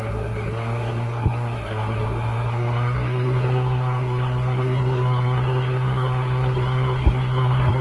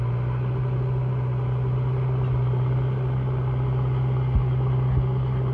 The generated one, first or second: first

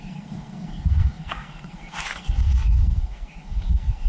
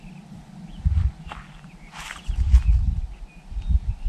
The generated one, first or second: first